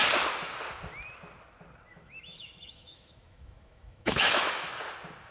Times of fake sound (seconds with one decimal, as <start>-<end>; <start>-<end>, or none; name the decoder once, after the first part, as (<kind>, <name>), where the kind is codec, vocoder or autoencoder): 1.9-4.7 (autoencoder, DAC-VAE)